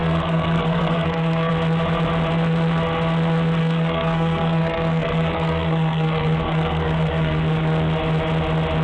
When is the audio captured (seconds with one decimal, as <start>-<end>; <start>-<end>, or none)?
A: 1.5-3.6; 7.4-8.8